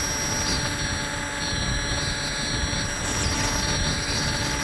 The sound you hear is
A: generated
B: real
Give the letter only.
B